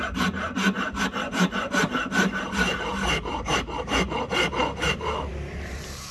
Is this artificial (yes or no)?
yes